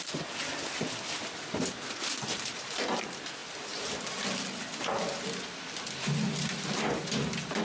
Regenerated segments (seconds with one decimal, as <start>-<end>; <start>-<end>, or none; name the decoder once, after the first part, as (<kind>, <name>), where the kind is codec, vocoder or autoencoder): none